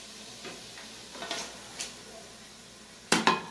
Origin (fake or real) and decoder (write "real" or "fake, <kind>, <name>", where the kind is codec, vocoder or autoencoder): real